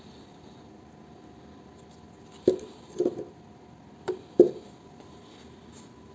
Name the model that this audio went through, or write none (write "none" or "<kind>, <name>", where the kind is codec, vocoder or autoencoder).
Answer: none